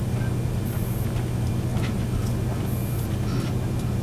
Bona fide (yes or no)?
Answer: yes